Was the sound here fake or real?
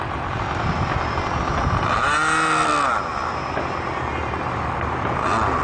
real